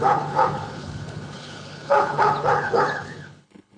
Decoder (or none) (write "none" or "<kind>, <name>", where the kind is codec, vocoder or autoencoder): codec, HILCodec